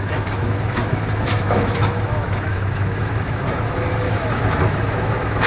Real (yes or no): no